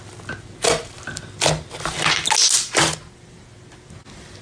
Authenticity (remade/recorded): recorded